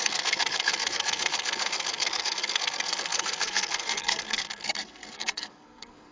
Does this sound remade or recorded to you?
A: remade